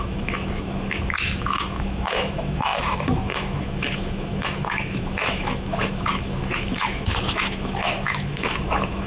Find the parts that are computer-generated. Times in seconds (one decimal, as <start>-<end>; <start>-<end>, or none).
0.0-9.1